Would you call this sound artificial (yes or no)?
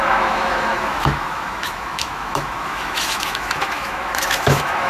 yes